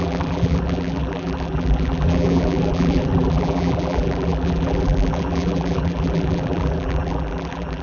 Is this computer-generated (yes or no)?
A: yes